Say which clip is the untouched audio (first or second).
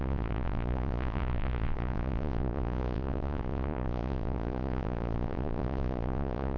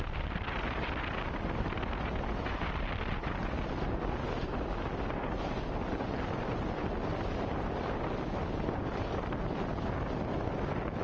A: second